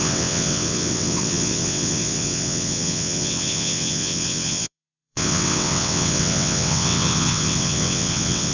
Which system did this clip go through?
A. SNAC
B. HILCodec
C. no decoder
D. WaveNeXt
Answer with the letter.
D